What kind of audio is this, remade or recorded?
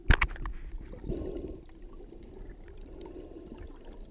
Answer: recorded